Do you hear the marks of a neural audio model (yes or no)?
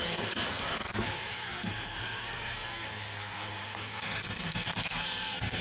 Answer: yes